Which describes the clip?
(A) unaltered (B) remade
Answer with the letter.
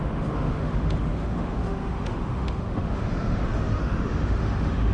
B